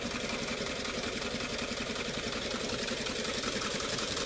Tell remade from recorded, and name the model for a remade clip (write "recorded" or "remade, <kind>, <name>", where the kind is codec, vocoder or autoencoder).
remade, vocoder, BigVGAN v2